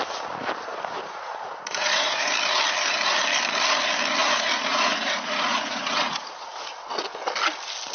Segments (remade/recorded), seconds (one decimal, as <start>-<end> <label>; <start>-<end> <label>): 0.0-0.7 recorded; 0.7-2.3 remade; 2.3-4.2 recorded; 4.2-6.7 remade; 6.7-7.9 recorded